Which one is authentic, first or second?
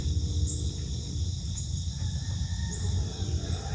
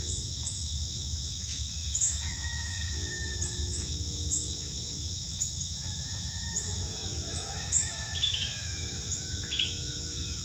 first